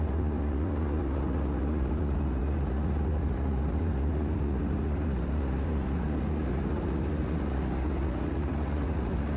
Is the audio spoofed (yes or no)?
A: yes